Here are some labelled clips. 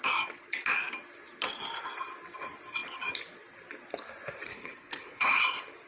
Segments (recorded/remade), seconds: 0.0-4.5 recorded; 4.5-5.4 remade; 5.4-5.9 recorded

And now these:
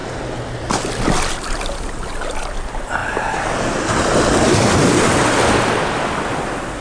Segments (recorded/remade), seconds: 0.0-6.8 recorded

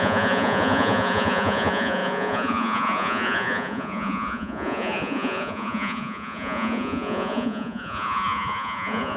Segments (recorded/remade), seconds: 0.0-9.2 remade

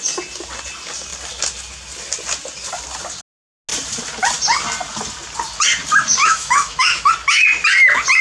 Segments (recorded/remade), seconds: 0.0-6.2 recorded; 6.2-7.1 remade; 7.1-8.2 recorded